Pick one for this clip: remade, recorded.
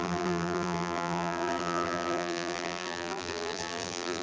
remade